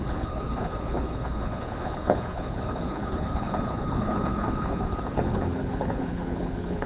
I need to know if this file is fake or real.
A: fake